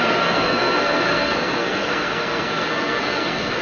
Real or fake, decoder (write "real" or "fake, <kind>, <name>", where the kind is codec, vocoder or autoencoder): fake, codec, SNAC